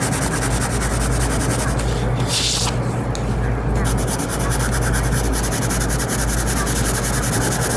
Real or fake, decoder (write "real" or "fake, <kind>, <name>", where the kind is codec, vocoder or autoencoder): real